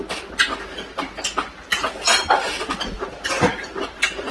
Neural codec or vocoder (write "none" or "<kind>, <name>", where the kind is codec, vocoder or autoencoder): vocoder, BigVGAN v2